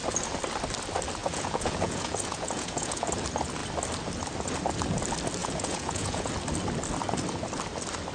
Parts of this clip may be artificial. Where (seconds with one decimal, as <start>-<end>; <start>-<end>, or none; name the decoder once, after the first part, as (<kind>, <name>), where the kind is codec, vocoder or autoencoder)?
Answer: 1.2-3.1 (vocoder, Vocos); 5.4-6.3